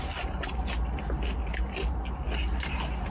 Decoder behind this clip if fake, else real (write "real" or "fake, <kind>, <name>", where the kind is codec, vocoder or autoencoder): real